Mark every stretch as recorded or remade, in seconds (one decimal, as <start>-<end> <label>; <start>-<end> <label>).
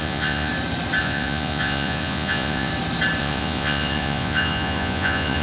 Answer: 0.0-0.5 remade; 0.5-1.0 recorded; 1.0-2.7 remade; 2.7-3.2 recorded; 3.2-5.4 remade